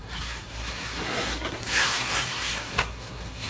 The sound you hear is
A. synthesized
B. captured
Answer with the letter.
A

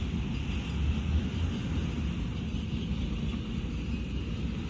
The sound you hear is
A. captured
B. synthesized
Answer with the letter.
A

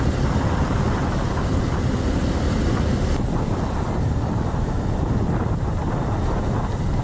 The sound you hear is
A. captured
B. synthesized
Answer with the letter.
A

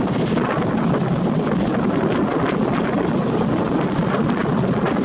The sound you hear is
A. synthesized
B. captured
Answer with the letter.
B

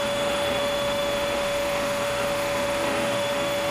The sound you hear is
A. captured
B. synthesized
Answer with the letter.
B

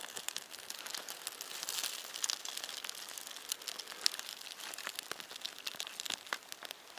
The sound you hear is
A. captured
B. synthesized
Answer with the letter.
A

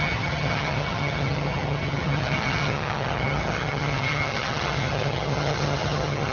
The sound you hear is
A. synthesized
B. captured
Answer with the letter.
A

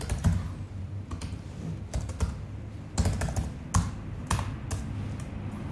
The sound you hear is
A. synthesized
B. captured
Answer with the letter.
B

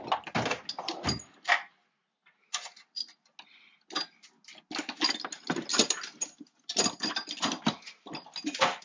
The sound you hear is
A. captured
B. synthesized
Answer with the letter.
A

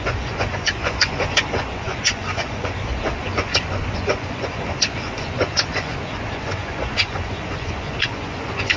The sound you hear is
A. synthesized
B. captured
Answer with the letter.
A